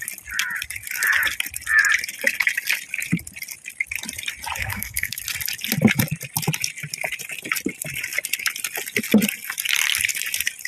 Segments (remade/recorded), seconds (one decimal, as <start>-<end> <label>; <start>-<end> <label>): 0.0-4.6 recorded; 4.6-5.2 remade; 5.2-10.7 recorded